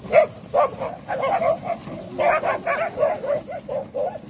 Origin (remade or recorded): recorded